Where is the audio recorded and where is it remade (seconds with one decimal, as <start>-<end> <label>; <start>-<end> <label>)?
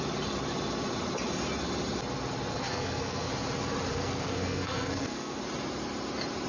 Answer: 0.0-2.5 recorded; 2.5-3.3 remade; 3.3-3.9 recorded; 3.9-5.4 remade; 5.4-6.5 recorded